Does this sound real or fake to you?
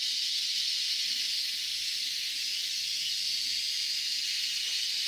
real